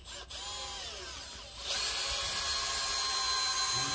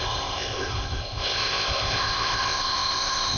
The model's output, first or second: second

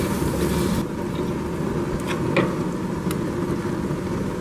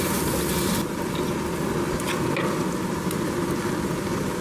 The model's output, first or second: second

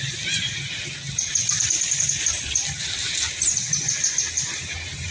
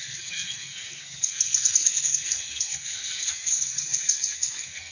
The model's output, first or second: second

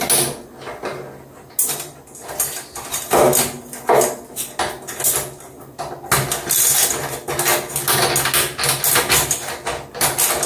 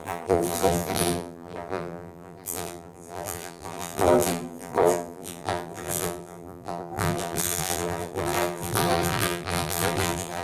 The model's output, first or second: second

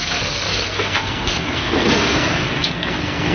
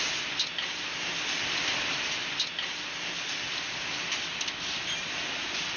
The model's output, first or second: first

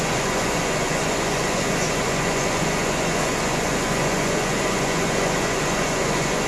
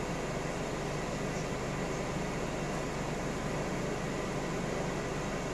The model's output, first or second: first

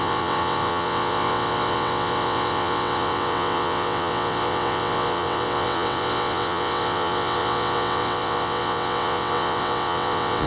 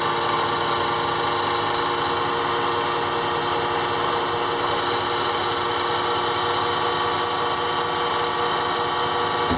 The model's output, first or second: first